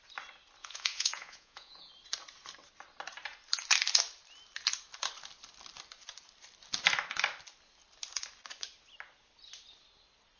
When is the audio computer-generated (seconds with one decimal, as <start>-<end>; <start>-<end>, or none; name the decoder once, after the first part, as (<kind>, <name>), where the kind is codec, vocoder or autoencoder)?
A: 0.6-1.9 (vocoder, Vocos)